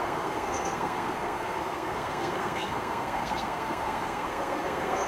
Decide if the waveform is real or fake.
fake